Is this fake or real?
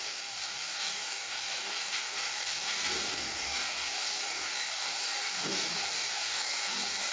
fake